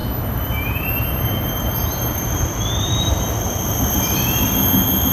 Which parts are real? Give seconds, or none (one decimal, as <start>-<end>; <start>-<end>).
3.1-5.1